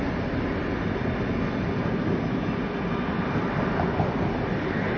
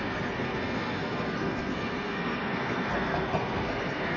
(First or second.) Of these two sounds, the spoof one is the second